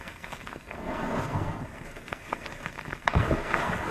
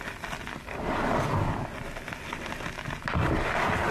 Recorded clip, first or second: second